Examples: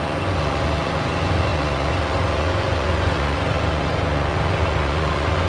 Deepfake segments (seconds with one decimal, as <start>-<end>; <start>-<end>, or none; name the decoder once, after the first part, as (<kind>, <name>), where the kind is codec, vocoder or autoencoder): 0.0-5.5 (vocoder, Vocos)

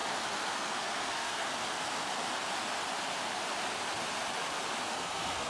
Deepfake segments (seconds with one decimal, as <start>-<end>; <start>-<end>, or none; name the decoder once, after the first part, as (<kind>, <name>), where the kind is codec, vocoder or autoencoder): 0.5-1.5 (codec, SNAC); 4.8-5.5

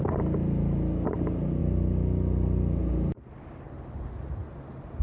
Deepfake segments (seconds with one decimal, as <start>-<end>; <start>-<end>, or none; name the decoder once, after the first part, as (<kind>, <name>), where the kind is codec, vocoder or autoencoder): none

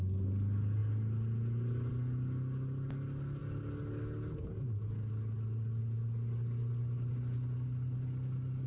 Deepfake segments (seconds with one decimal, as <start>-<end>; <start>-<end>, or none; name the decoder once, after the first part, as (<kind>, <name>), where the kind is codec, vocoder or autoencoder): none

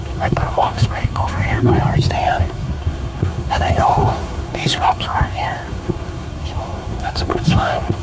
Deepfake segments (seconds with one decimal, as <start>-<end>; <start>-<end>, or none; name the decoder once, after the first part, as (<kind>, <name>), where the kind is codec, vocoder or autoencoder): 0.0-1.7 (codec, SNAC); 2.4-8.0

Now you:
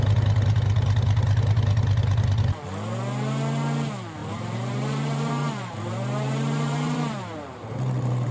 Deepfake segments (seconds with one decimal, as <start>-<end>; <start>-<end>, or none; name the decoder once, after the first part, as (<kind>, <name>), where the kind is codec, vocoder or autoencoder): 4.2-8.3 (vocoder, BigVGAN v2)

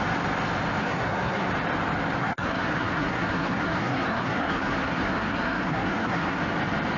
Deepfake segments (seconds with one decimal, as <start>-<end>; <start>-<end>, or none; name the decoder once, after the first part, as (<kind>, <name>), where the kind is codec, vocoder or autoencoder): 0.8-1.5 (codec, SNAC); 2.2-6.4

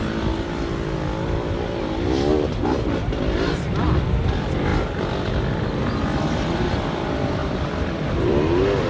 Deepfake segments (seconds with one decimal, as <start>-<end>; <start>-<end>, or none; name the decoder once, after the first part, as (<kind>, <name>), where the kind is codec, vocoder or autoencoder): 7.4-7.9 (vocoder, BigVGAN v2)